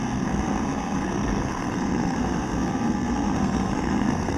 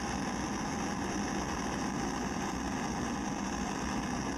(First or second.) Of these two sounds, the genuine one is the second